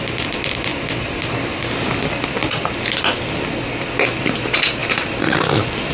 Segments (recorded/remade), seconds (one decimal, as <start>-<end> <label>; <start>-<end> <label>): 0.0-5.9 recorded